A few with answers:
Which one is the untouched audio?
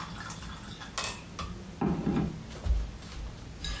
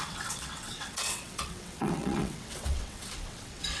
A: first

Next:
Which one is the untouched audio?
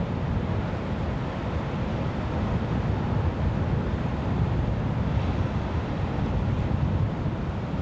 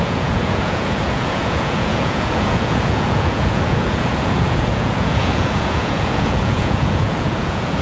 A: first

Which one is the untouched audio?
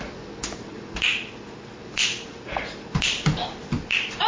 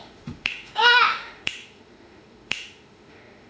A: first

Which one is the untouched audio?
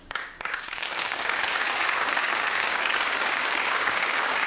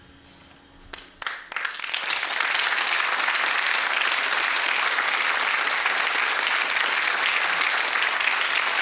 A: second